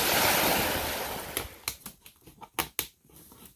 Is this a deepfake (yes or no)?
no